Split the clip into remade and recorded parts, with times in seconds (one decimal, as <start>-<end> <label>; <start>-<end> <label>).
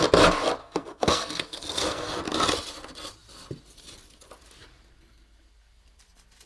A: 0.0-0.6 recorded; 0.6-2.2 remade; 2.2-6.5 recorded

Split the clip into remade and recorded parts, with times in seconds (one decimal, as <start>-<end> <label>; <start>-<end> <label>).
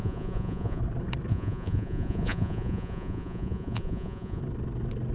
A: 0.0-0.8 remade; 0.8-1.3 recorded; 1.3-4.4 remade; 4.4-5.1 recorded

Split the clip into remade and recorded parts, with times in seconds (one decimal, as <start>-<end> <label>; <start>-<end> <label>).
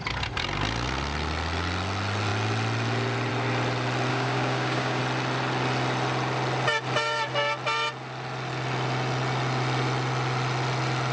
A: 0.0-4.1 recorded; 4.1-5.0 remade; 5.0-11.1 recorded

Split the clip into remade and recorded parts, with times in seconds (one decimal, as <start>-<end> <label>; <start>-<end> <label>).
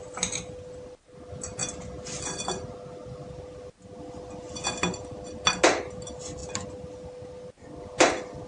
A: 0.0-8.5 recorded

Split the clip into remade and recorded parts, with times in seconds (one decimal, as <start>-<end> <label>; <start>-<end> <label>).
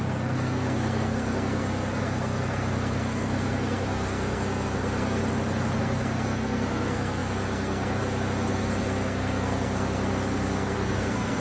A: 0.0-5.2 remade; 5.2-5.8 recorded; 5.8-11.4 remade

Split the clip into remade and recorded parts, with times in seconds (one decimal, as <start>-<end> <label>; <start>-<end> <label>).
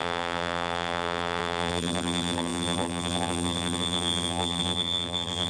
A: 0.0-5.5 remade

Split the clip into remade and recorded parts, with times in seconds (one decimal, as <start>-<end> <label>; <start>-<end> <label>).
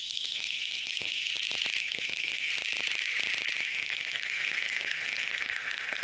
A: 0.0-1.3 remade; 1.3-1.8 recorded; 1.8-2.5 remade; 2.5-3.6 recorded; 3.6-6.0 remade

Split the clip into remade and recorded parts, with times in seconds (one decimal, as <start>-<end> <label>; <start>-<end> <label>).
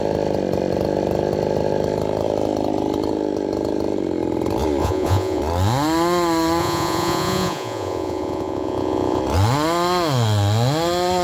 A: 0.0-4.8 recorded; 4.8-5.4 remade; 5.4-6.6 recorded; 6.6-9.2 remade; 9.2-11.2 recorded